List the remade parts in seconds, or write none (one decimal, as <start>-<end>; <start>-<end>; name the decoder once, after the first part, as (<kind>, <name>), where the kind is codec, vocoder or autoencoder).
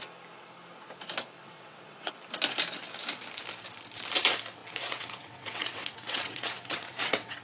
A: 1.4-2.1 (vocoder, WaveNeXt); 4.6-7.4